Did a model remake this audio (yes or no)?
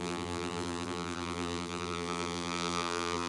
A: yes